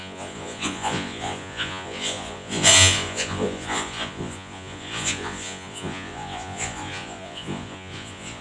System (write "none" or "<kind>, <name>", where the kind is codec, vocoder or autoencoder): vocoder, Vocos